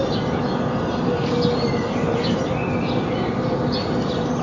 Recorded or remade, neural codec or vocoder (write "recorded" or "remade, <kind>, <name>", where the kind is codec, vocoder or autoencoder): recorded